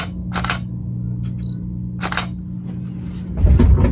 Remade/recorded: recorded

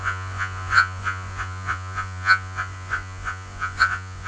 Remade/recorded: remade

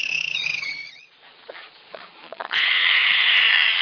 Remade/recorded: remade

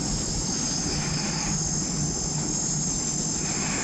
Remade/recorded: recorded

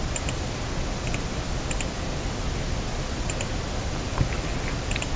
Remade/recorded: recorded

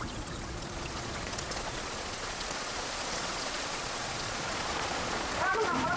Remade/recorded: remade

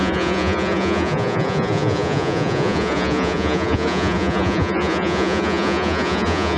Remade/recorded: remade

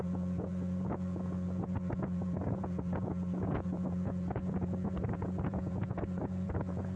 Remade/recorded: remade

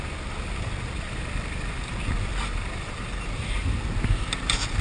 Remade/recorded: recorded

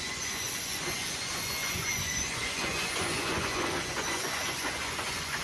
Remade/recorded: remade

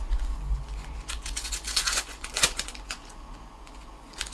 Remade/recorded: remade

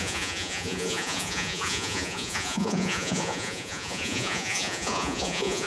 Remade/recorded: remade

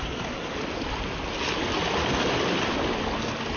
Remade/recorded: recorded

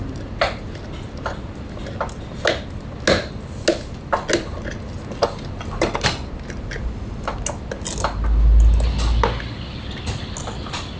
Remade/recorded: recorded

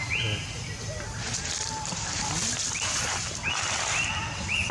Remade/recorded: recorded